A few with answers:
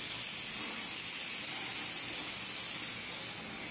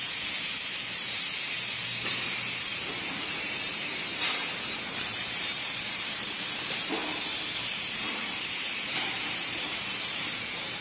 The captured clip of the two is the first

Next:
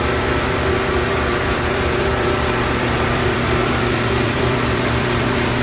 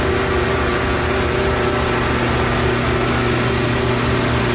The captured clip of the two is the second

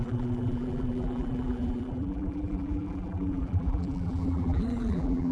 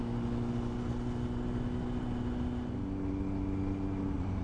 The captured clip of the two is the second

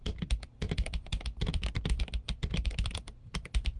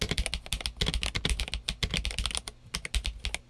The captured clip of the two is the second